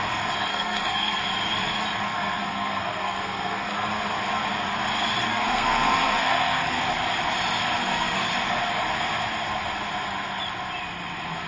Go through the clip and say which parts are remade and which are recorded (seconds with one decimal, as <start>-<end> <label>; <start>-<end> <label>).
0.0-0.5 recorded; 0.5-1.2 remade; 1.2-2.1 recorded; 2.1-3.7 remade; 3.7-5.3 recorded; 5.3-6.8 remade; 6.8-7.8 recorded; 7.8-8.3 remade; 8.3-11.5 recorded